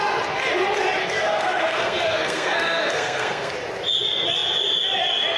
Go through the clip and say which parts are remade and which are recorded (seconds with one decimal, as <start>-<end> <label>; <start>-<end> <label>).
0.0-1.0 recorded; 1.0-3.5 remade; 3.5-5.4 recorded